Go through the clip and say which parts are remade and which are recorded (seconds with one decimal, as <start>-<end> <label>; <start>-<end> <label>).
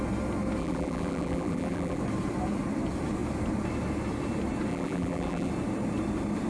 0.0-0.6 recorded; 0.6-2.0 remade; 2.0-4.7 recorded; 4.7-5.5 remade; 5.5-6.5 recorded